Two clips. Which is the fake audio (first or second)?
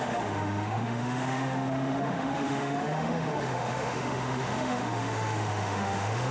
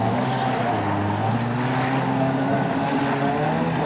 first